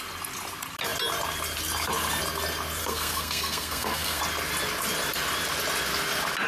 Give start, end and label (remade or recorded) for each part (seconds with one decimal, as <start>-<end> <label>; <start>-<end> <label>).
0.0-2.8 recorded; 2.8-4.2 remade; 4.2-6.5 recorded